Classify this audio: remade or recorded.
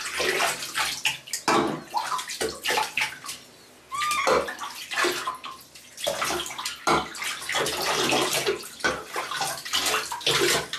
recorded